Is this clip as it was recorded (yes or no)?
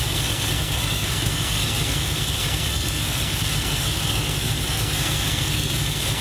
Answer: no